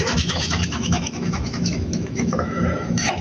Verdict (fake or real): fake